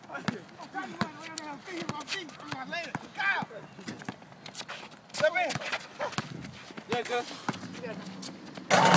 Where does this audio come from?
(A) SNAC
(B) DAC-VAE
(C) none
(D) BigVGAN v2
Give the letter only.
C